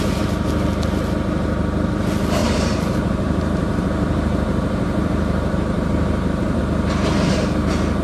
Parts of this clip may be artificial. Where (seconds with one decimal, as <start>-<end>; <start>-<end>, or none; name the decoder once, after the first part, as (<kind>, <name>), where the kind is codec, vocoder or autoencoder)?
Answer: 2.4-6.6 (vocoder, BigVGAN v2)